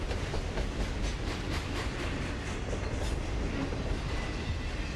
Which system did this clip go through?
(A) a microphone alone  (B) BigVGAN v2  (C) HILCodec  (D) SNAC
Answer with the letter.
A